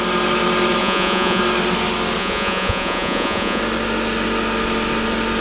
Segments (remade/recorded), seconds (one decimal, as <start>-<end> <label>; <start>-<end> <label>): 0.0-0.8 recorded; 0.8-1.4 remade; 1.4-2.2 recorded; 2.2-3.6 remade; 3.6-5.4 recorded